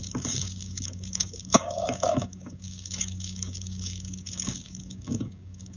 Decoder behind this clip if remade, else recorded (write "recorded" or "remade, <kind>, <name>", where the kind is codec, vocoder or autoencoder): remade, codec, DAC